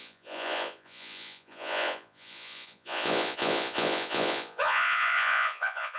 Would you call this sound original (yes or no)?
no